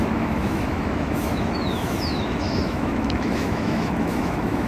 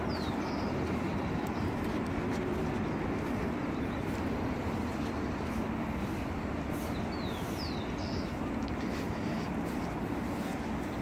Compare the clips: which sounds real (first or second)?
second